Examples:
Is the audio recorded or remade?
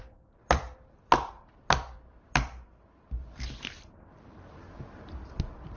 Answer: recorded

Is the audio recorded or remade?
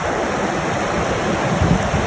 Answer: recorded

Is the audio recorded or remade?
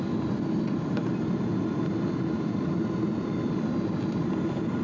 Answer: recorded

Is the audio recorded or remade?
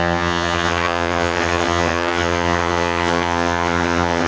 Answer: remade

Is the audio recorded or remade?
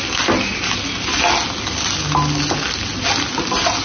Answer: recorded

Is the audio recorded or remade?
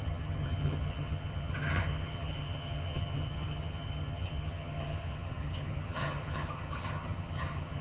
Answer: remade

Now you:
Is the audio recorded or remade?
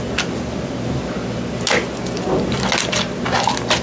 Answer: recorded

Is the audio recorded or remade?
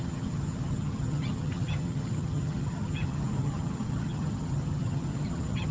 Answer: remade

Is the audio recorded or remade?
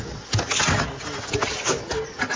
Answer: recorded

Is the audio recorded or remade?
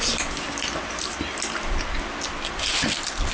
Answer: recorded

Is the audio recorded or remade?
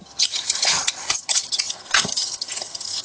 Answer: remade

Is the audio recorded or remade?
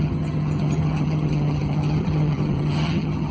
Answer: remade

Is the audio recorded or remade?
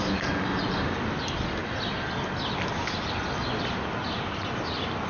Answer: recorded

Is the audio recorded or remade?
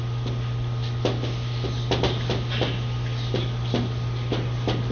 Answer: recorded